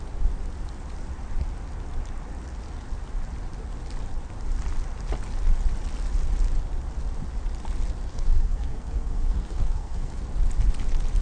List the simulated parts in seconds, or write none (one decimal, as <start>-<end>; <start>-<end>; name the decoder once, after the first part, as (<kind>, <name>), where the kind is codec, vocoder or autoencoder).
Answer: 8.1-10.2 (codec, SNAC)